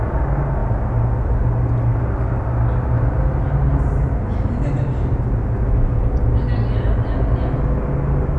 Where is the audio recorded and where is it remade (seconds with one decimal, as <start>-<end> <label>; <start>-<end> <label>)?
0.0-8.4 recorded